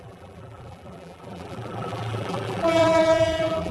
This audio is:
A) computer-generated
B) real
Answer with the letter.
A